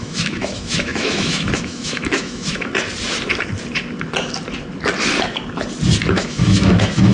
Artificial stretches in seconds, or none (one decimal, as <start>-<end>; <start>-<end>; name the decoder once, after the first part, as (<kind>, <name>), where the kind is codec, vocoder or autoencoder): 0.0-2.7 (autoencoder, DAC-VAE); 6.1-7.1